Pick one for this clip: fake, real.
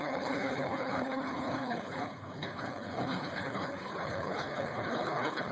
fake